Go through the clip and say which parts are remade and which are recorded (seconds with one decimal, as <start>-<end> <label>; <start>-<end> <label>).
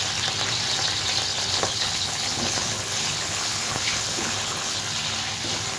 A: 0.0-1.3 recorded; 1.3-4.8 remade; 4.8-5.8 recorded